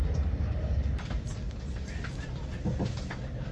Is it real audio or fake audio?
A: real